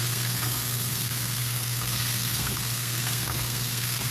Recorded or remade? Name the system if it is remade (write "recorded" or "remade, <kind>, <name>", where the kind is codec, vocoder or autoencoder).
remade, codec, SNAC